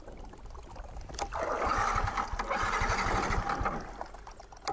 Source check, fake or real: real